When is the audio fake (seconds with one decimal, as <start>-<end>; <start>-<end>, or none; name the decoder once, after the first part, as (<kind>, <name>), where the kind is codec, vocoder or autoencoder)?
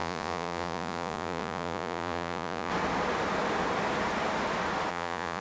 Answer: 0.0-2.7 (vocoder, Vocos); 4.9-5.4